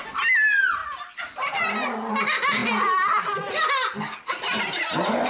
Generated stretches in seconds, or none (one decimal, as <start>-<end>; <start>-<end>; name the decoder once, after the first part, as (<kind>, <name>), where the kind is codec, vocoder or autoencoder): none